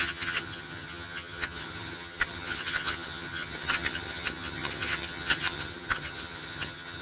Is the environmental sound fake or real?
fake